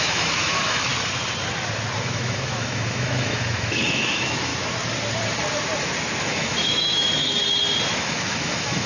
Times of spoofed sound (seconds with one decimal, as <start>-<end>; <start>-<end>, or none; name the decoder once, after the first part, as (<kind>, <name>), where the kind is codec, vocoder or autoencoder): 0.0-0.9 (autoencoder, DAC-VAE); 2.0-4.5; 6.2-7.4; 7.9-8.9